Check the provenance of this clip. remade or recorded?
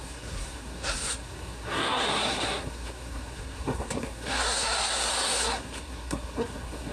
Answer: remade